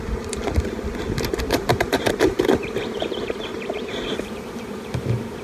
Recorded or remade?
remade